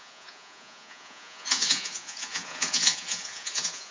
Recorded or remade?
remade